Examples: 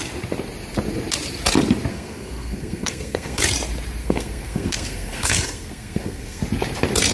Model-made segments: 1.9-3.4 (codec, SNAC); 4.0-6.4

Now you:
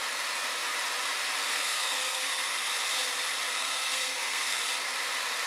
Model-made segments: 1.5-2.5 (codec, SNAC); 3.5-4.6

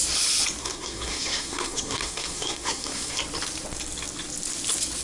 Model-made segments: 0.6-3.2 (codec, SNAC)

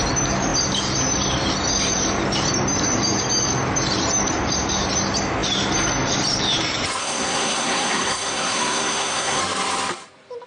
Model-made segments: 7.0-9.4 (codec, SNAC)

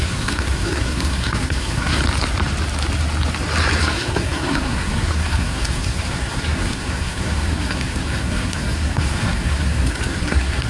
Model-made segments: 0.0-2.0 (codec, SNAC); 3.8-10.7

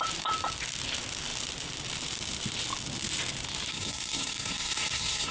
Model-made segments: 3.7-5.3 (codec, SNAC)